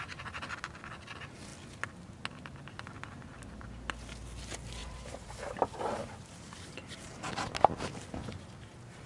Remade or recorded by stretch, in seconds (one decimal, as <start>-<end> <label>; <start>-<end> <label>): 0.0-4.8 recorded; 4.8-7.2 remade; 7.2-9.1 recorded